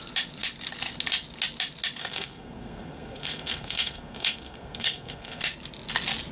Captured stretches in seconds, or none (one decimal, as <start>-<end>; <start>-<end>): 0.0-2.0; 5.4-6.3